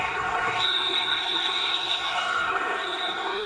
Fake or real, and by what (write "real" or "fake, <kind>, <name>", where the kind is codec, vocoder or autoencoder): fake, codec, SNAC